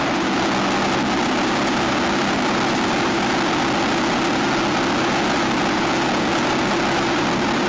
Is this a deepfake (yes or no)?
no